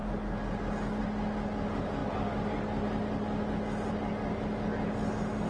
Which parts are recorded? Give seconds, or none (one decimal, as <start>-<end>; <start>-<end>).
0.0-5.5